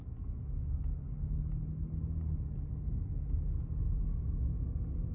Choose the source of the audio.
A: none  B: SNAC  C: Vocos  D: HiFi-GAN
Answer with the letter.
A